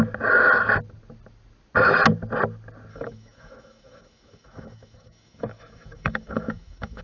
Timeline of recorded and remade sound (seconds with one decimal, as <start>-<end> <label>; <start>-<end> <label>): 0.0-2.9 recorded; 2.9-7.0 remade